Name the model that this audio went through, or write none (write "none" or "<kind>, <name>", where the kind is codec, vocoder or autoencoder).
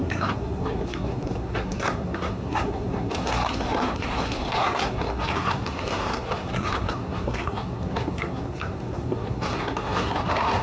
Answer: codec, SNAC